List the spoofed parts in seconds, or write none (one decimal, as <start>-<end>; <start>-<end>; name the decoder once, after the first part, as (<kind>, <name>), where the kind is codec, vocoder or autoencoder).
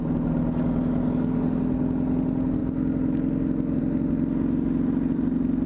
none